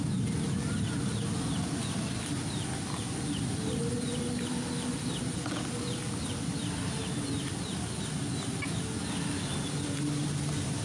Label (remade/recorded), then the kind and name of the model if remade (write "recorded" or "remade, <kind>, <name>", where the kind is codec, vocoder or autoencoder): recorded